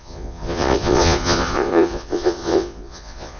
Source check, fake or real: fake